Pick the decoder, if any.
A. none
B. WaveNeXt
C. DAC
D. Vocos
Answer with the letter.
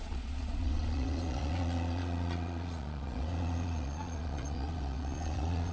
D